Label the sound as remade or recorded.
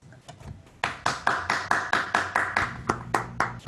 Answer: recorded